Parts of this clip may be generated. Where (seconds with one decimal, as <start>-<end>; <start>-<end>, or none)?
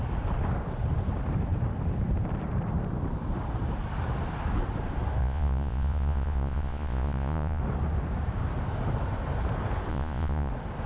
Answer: 5.2-7.6; 9.9-10.5